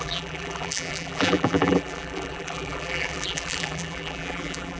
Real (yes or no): no